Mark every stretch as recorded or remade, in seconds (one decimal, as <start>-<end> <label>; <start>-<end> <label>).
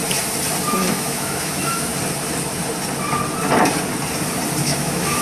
0.0-0.9 recorded; 0.9-1.9 remade; 1.9-4.6 recorded; 4.6-5.2 remade